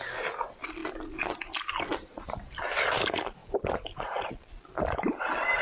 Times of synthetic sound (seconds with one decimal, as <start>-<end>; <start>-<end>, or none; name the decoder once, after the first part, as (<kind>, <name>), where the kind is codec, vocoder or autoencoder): none